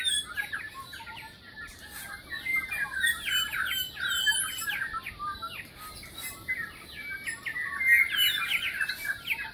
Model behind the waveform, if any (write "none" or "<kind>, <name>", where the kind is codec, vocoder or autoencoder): none